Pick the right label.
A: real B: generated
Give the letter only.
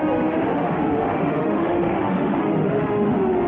B